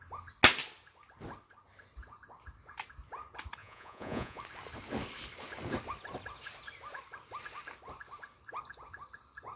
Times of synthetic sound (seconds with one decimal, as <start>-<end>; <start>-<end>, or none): 3.6-4.4